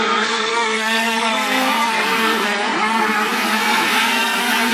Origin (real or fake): fake